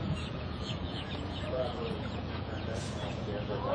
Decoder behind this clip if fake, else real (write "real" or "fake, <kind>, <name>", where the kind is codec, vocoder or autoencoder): fake, vocoder, Vocos